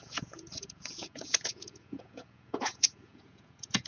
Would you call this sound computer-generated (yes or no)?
yes